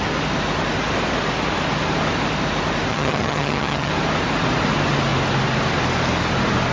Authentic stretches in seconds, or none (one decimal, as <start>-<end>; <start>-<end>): 0.0-2.9; 3.9-6.7